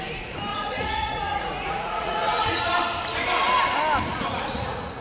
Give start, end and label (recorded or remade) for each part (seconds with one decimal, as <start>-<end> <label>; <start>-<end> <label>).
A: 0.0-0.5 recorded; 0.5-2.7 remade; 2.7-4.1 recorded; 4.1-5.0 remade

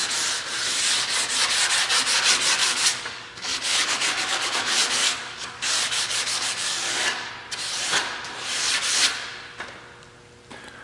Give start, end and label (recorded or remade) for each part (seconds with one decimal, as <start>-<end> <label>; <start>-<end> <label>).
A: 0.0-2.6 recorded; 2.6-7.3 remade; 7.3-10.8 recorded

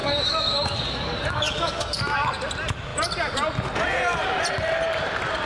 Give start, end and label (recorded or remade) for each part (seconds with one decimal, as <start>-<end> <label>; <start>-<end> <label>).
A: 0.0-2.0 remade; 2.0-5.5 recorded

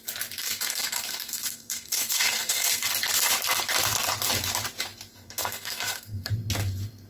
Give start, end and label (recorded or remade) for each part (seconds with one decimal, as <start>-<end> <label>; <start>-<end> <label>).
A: 0.0-0.4 recorded; 0.4-2.8 remade; 2.8-5.2 recorded; 5.2-6.3 remade; 6.3-7.1 recorded